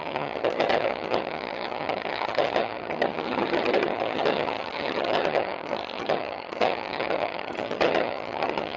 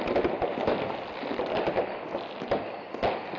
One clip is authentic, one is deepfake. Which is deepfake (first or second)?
first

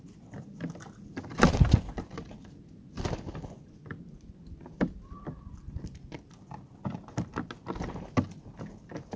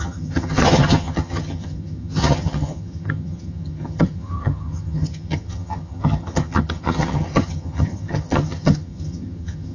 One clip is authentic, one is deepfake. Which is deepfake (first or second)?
second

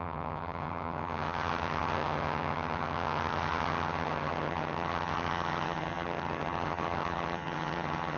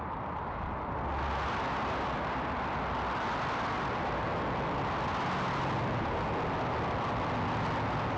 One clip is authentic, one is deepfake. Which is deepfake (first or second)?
first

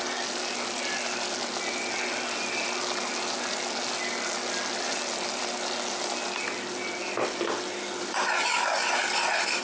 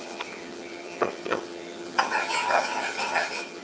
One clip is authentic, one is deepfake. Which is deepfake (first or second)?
second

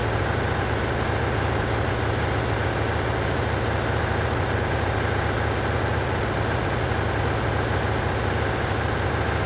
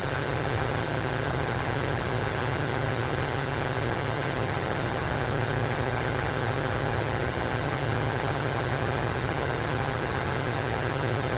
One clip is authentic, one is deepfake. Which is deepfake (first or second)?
second